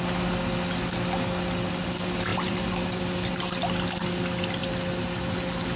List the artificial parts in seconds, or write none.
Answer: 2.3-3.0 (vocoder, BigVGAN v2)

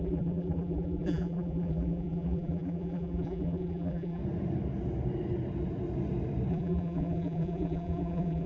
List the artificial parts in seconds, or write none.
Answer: 0.0-4.2 (vocoder, BigVGAN v2); 6.5-8.5